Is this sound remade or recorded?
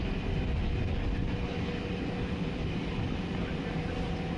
recorded